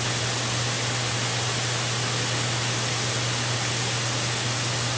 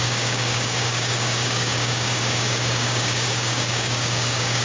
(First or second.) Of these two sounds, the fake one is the second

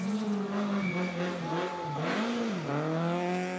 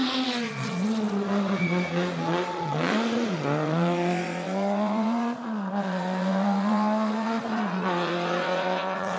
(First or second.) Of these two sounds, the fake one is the second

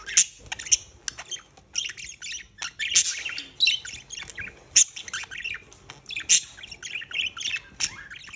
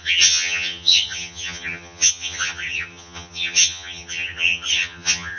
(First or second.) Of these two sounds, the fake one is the second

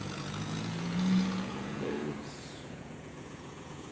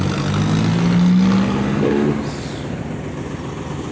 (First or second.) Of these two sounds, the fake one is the first